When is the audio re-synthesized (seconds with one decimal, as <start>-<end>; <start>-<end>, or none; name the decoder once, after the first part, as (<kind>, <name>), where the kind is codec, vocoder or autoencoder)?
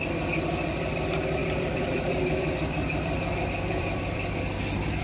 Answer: 1.4-4.4 (vocoder, BigVGAN v2)